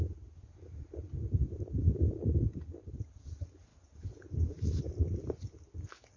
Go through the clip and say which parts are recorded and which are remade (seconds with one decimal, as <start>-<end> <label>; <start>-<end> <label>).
0.0-6.2 recorded